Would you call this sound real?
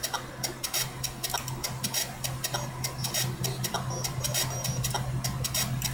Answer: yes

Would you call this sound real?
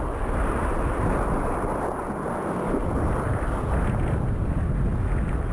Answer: yes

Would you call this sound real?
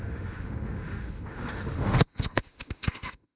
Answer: no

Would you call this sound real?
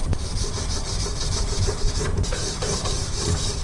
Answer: no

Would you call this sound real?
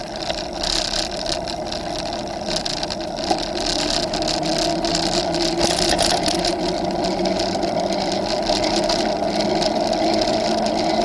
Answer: yes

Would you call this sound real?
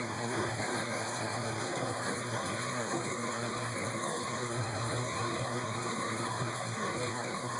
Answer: no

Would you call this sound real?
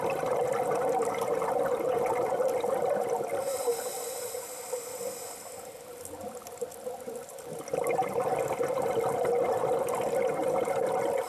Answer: yes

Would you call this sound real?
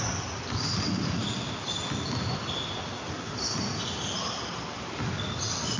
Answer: yes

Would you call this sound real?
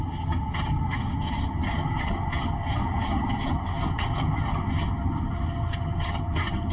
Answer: no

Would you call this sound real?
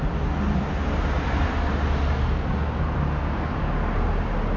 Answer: yes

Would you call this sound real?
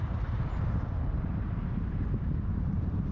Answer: no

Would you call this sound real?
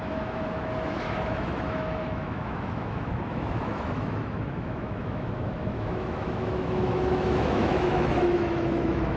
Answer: no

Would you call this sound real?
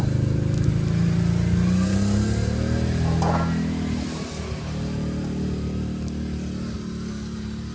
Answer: yes